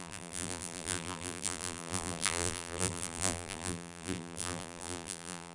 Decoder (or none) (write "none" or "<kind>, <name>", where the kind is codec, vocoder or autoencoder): vocoder, BigVGAN v2